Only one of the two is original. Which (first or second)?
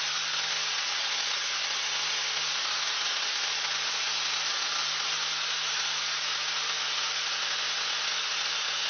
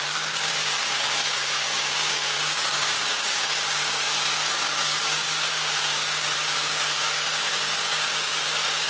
first